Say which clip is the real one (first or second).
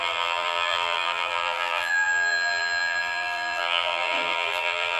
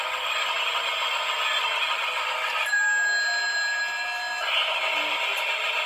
second